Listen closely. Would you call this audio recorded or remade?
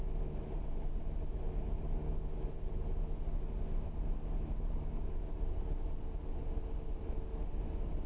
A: recorded